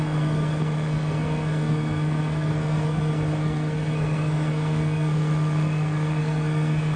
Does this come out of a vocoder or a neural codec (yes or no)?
yes